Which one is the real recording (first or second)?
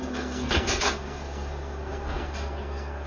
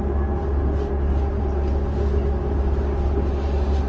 second